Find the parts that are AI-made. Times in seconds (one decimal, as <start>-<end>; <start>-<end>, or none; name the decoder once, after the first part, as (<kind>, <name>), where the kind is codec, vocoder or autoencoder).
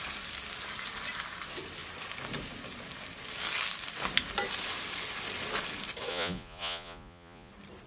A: 6.1-7.5 (vocoder, Vocos)